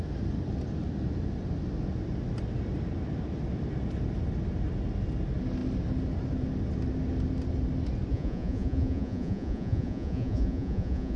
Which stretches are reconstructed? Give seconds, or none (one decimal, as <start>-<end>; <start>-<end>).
8.1-11.2